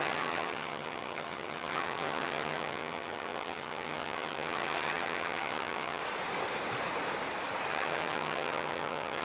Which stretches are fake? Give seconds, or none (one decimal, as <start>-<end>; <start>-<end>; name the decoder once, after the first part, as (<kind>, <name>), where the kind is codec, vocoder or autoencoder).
0.0-6.0 (vocoder, HiFi-GAN); 7.7-9.2